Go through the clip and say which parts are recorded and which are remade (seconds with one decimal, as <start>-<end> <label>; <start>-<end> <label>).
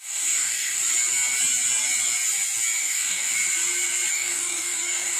0.0-0.8 remade; 0.8-2.8 recorded; 2.8-3.3 remade; 3.3-4.1 recorded; 4.1-5.2 remade